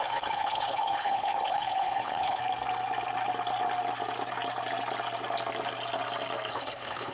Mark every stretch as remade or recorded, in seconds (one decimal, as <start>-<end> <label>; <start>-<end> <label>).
0.0-2.4 remade; 2.4-6.5 recorded; 6.5-7.1 remade